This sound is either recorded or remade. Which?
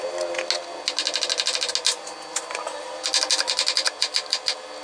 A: recorded